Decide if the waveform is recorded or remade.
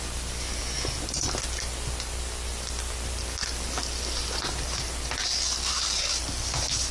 recorded